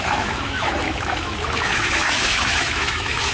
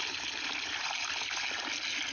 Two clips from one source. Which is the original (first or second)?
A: second